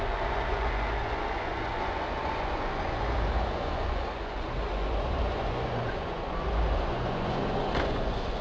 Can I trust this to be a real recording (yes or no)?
no